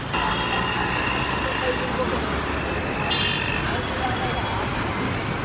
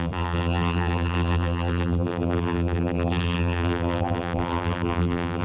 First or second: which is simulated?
second